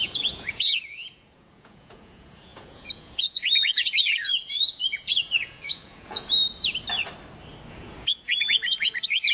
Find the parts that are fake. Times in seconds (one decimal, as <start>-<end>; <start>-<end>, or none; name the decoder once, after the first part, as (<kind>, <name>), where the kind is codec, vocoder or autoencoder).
0.0-6.4 (vocoder, Vocos); 7.7-9.3